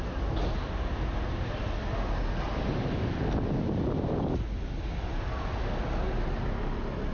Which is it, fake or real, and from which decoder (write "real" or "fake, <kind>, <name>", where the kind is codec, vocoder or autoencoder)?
real